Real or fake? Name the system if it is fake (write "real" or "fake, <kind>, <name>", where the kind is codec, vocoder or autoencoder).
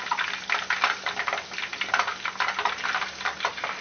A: real